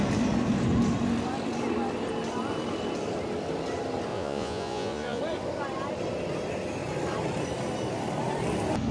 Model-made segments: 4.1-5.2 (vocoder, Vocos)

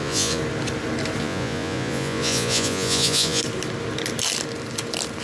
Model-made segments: 0.0-0.4 (vocoder, Vocos); 1.2-3.4

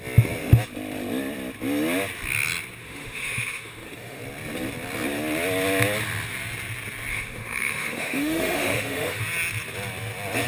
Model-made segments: 2.8-4.2 (autoencoder, DAC-VAE); 7.1-9.2

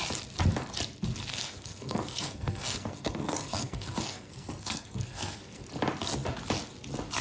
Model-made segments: 1.3-5.6 (codec, SNAC)

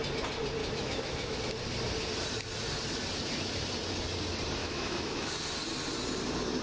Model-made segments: 0.6-1.4 (autoencoder, DAC-VAE); 4.6-5.3

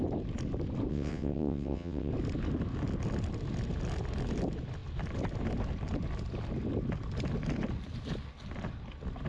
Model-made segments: 0.9-2.1 (vocoder, WaveNeXt)

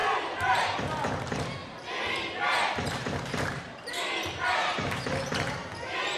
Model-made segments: 0.0-0.8 (vocoder, BigVGAN v2); 1.6-5.3

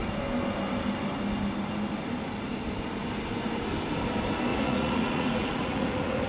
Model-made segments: 4.5-6.3 (vocoder, Vocos)